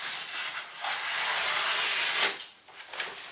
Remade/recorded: recorded